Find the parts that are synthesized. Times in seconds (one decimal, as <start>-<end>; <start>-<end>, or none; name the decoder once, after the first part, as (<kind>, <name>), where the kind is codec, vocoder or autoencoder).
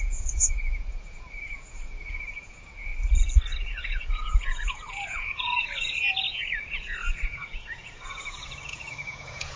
0.0-2.9 (vocoder, Vocos); 3.7-9.6